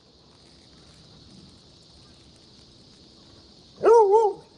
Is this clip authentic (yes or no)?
yes